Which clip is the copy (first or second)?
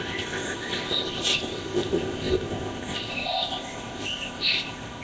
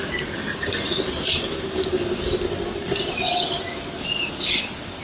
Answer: first